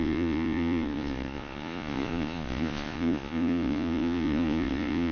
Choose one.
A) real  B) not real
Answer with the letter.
B